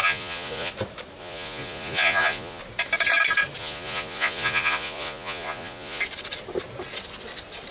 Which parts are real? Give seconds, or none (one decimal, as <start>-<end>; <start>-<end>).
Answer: 0.7-1.2; 2.6-3.6; 6.0-7.7